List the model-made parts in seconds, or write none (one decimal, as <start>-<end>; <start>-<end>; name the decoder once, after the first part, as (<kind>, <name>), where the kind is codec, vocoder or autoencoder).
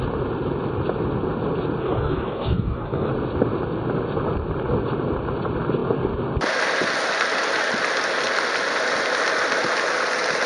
1.8-3.1 (codec, DAC)